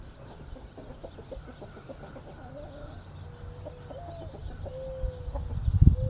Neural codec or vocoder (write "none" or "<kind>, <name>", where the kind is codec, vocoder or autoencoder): none